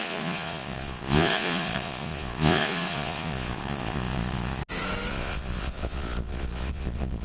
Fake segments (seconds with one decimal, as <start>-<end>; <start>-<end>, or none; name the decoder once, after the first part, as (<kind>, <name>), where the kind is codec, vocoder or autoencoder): 0.0-4.6 (vocoder, Vocos); 5.1-7.2